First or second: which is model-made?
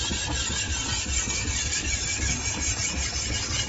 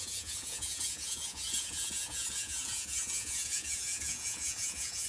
second